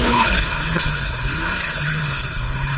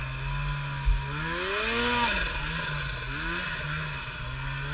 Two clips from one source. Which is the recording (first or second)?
second